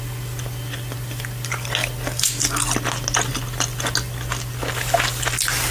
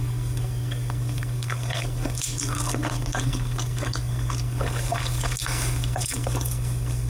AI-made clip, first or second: second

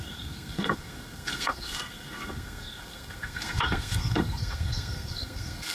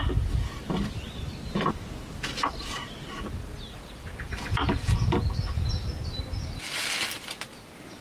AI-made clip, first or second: first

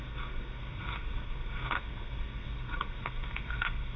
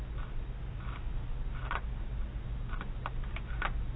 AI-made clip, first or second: first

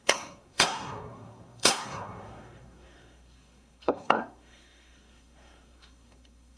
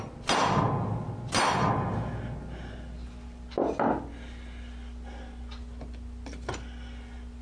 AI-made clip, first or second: first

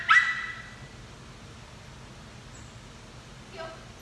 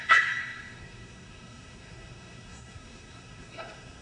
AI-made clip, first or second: second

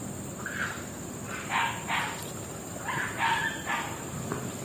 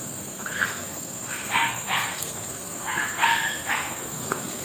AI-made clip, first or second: second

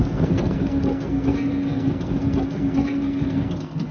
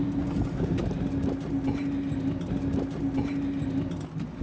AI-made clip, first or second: first